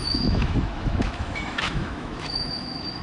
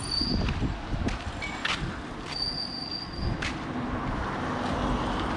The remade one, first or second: first